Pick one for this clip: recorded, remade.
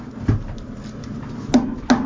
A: recorded